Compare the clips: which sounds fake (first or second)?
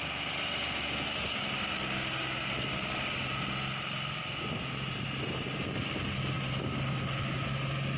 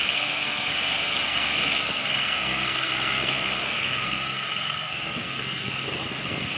second